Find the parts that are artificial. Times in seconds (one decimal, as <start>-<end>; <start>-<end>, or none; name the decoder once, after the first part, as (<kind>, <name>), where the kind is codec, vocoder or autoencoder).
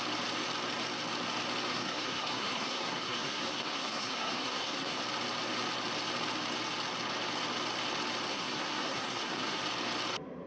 1.7-5.0 (codec, SNAC); 8.3-9.6